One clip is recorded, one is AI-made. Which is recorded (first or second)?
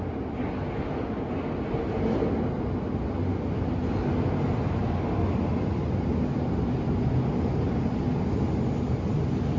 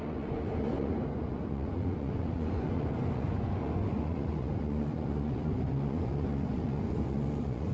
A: first